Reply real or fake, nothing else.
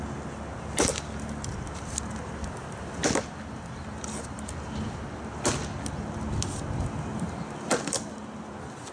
real